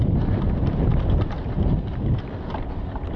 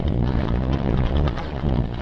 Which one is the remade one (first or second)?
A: second